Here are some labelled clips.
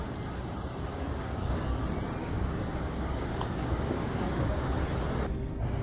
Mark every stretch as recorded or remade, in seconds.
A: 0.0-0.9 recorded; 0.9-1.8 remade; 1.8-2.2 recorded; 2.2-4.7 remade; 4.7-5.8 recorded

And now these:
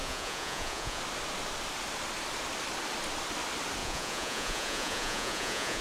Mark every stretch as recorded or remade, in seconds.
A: 0.0-1.0 remade; 1.0-3.8 recorded; 3.8-5.8 remade

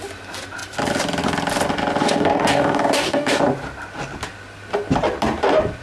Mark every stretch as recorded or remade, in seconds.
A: 0.0-2.0 recorded; 2.0-3.4 remade; 3.4-5.8 recorded

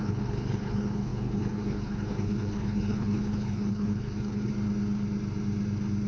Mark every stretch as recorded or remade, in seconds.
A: 0.0-4.5 remade; 4.5-6.1 recorded